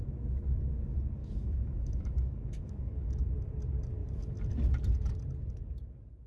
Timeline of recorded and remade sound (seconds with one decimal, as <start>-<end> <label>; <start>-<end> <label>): 0.0-1.2 recorded; 1.2-3.3 remade; 3.3-6.3 recorded

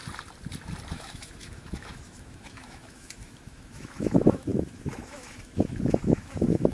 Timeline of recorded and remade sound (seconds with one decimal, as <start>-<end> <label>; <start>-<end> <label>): 0.0-0.9 recorded; 0.9-6.7 remade

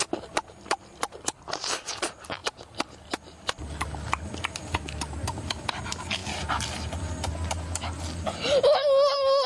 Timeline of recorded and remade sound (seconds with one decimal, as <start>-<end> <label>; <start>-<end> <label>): 0.0-9.5 recorded

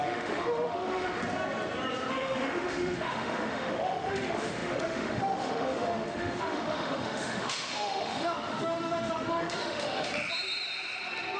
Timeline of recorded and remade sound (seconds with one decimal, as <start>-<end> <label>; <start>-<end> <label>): 0.0-1.2 remade; 1.2-2.1 recorded; 2.1-10.1 remade; 10.1-11.4 recorded